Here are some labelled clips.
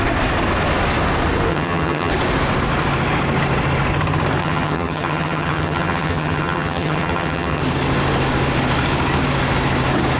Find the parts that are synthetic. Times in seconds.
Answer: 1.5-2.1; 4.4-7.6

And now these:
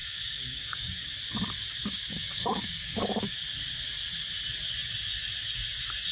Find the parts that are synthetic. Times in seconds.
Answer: 0.0-1.1; 1.8-3.4

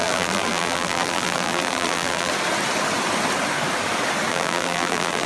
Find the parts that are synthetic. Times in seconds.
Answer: 0.0-2.3; 4.3-5.3

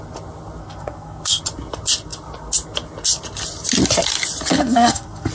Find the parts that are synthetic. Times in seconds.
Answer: 0.6-1.4; 4.5-5.3

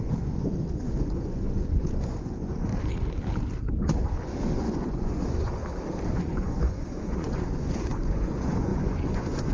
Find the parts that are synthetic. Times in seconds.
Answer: 0.0-2.7; 4.2-5.6; 6.1-9.5

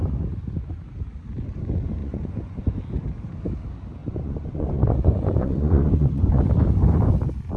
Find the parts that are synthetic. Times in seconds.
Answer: 2.0-2.6; 4.0-6.4

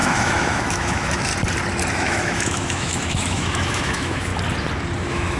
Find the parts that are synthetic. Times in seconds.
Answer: 0.0-1.3; 1.9-4.3; 5.0-5.4